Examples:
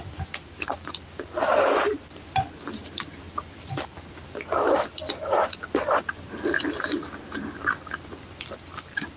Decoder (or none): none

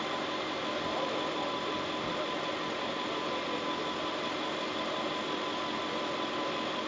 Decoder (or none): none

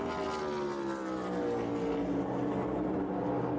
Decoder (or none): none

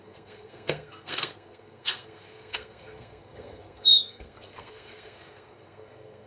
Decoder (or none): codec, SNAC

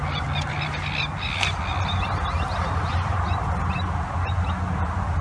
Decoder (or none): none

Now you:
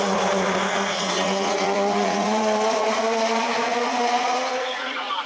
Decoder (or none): vocoder, Vocos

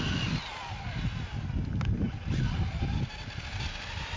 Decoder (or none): none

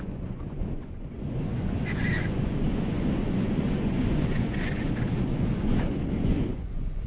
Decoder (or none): vocoder, Vocos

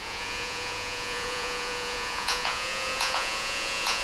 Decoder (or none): vocoder, Vocos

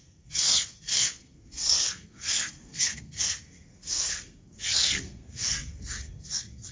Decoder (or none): codec, SNAC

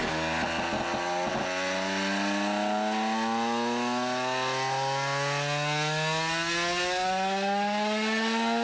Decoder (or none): none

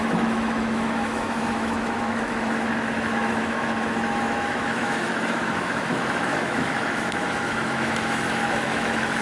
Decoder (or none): autoencoder, DAC-VAE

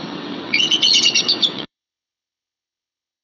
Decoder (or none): vocoder, WaveNeXt